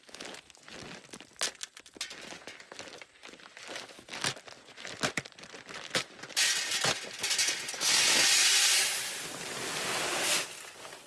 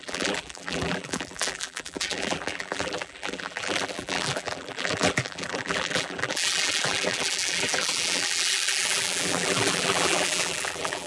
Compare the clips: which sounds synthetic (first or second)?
second